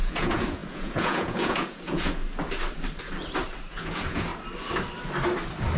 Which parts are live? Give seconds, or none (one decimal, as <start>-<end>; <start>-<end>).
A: 2.2-3.7; 4.3-5.8